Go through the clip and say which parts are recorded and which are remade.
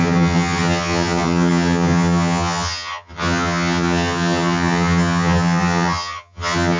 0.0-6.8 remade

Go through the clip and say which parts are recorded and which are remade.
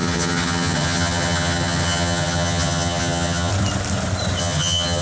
0.0-3.5 remade; 3.5-4.4 recorded; 4.4-5.0 remade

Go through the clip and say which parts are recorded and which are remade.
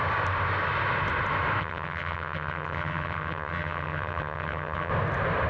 0.0-1.6 recorded; 1.6-4.9 remade; 4.9-5.5 recorded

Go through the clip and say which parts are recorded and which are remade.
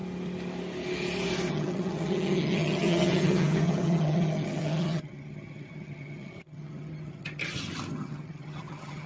0.0-1.5 recorded; 1.5-7.4 remade; 7.4-7.9 recorded; 7.9-9.1 remade